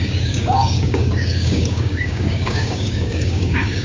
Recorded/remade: remade